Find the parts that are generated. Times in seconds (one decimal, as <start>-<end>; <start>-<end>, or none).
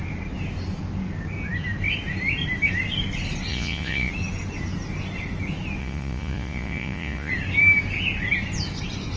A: 3.5-4.1; 5.8-7.3